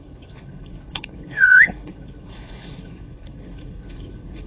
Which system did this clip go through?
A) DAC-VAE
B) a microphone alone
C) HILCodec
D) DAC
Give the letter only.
C